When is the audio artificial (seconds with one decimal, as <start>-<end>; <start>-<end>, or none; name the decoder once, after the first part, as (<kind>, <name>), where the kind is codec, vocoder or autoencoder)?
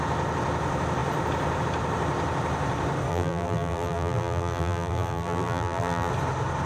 3.1-6.1 (vocoder, BigVGAN v2)